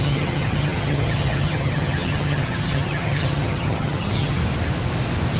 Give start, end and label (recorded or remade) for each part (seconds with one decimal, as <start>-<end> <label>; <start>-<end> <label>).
0.0-4.4 remade; 4.4-5.4 recorded